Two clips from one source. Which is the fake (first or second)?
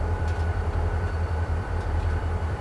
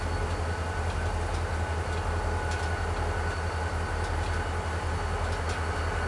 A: first